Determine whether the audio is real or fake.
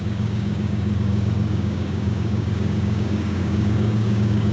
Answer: fake